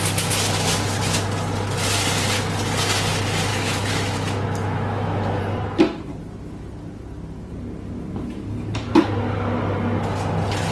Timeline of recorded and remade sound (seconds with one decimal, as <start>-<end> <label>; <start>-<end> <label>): 0.0-3.5 recorded; 3.5-5.4 remade; 5.4-10.7 recorded